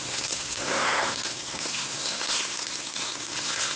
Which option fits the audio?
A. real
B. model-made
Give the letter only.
B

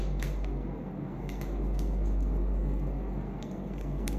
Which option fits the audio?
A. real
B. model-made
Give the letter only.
B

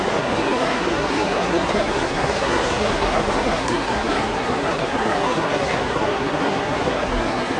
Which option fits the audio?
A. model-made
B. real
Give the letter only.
A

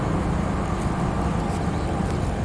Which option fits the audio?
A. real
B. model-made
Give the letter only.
A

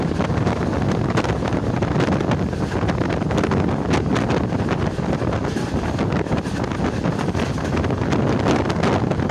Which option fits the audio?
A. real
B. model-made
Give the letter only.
A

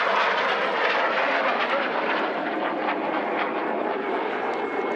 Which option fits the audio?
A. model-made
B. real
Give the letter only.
B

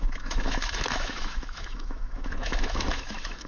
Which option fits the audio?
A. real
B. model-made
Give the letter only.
B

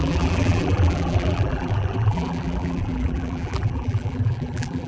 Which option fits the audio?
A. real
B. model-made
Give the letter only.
B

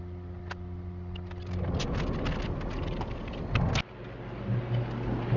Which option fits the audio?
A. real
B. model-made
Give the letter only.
A